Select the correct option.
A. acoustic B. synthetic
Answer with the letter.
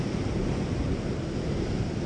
A